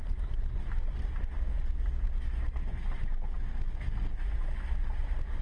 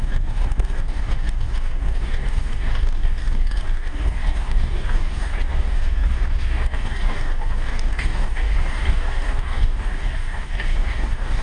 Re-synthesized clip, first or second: second